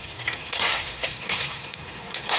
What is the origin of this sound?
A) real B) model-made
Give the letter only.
B